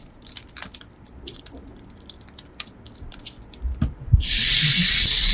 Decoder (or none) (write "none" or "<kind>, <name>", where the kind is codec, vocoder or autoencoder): vocoder, BigVGAN v2